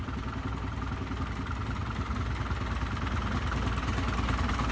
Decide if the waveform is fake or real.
real